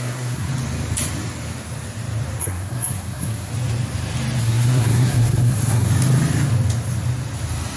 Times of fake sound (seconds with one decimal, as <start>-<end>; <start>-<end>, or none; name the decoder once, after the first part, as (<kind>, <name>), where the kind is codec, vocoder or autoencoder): 0.0-0.5 (codec, SNAC); 2.4-3.5; 4.4-5.9